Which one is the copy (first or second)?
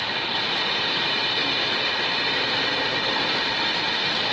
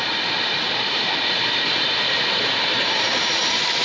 second